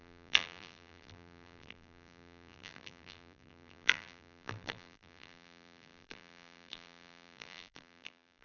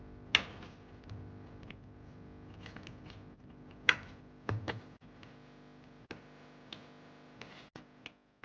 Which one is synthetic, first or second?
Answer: first